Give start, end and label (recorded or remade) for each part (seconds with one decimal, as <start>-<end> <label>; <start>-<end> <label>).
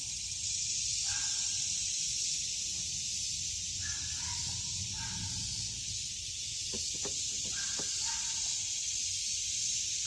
0.0-10.1 recorded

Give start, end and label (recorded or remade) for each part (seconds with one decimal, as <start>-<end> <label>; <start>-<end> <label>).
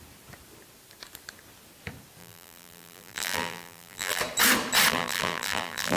0.0-2.2 recorded; 2.2-4.2 remade; 4.2-4.9 recorded; 4.9-6.0 remade